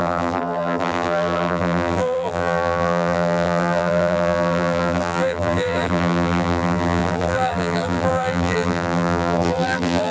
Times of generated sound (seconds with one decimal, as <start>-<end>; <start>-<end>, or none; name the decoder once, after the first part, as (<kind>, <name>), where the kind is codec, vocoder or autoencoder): 0.0-10.1 (vocoder, BigVGAN v2)